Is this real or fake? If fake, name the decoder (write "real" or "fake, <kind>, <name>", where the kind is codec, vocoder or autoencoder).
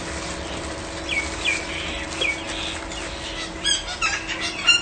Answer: real